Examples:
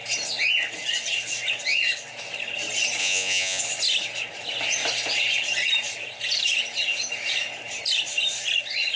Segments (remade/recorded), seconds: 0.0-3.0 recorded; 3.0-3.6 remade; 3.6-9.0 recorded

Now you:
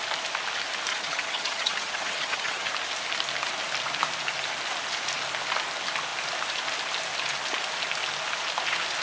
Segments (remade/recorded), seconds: 0.0-0.9 recorded; 0.9-2.7 remade; 2.7-9.0 recorded

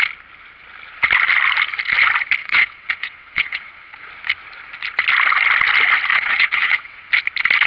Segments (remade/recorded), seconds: 0.0-2.4 recorded; 2.4-4.1 remade; 4.1-6.1 recorded; 6.1-7.1 remade; 7.1-7.7 recorded

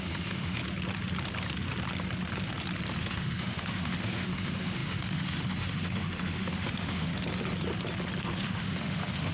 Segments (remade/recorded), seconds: 0.0-0.6 remade; 0.6-3.0 recorded; 3.0-7.1 remade; 7.1-8.2 recorded; 8.2-9.3 remade

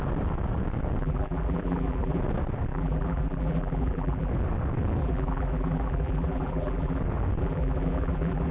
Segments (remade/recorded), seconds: 0.0-1.0 recorded; 1.0-2.2 remade; 2.2-2.7 recorded; 2.7-4.3 remade; 4.3-5.0 recorded; 5.0-7.0 remade; 7.0-7.4 recorded; 7.4-8.5 remade